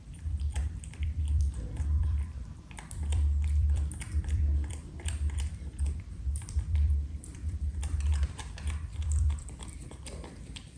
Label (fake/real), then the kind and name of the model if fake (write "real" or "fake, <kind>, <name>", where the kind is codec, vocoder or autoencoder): fake, vocoder, BigVGAN v2